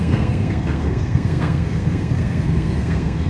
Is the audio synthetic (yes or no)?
yes